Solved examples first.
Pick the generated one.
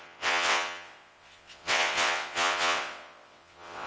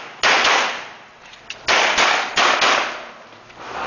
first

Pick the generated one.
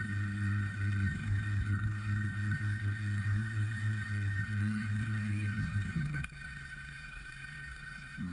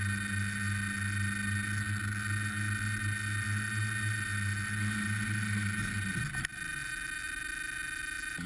first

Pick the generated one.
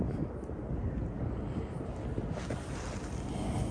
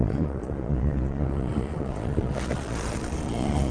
second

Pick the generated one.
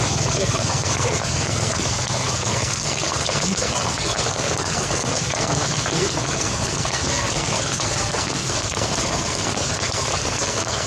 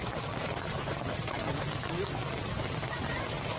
first